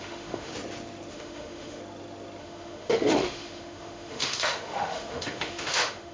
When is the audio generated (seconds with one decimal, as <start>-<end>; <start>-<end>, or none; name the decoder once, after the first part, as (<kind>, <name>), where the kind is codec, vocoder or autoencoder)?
0.0-0.5 (autoencoder, DAC-VAE); 1.1-1.8; 2.4-6.1